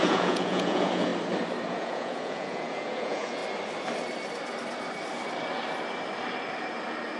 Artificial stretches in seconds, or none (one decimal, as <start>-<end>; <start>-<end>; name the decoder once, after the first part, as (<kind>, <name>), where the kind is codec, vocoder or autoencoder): 0.0-1.1 (vocoder, Vocos); 1.7-3.4